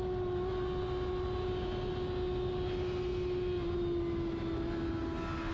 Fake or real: real